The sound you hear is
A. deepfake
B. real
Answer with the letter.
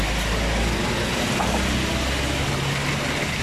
B